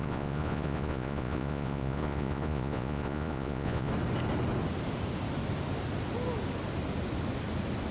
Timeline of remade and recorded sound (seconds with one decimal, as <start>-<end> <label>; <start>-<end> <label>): 0.0-3.9 remade; 3.9-7.9 recorded